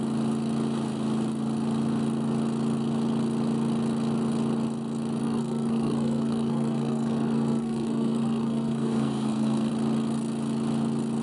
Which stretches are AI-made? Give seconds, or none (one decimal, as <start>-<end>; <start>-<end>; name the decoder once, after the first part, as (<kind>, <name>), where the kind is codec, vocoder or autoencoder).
5.2-9.7 (codec, SNAC)